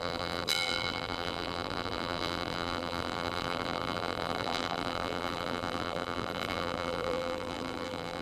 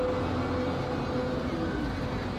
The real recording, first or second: second